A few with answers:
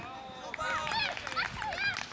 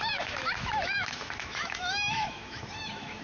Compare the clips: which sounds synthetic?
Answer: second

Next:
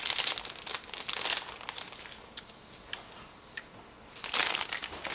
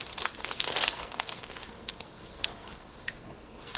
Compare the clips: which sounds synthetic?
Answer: second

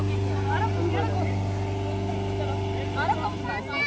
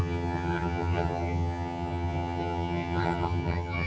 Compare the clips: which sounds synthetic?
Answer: second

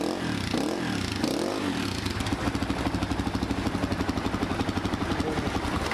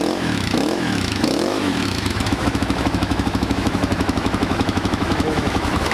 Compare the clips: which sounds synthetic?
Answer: second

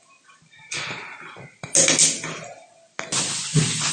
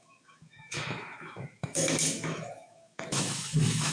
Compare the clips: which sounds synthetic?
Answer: second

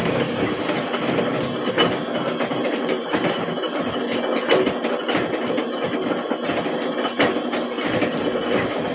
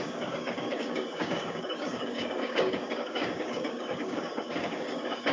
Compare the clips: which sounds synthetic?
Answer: second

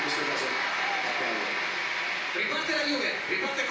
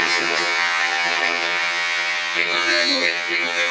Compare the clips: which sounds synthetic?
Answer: second